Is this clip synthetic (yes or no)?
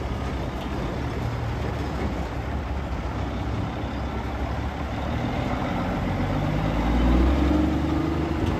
no